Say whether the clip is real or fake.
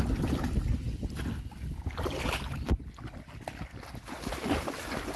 real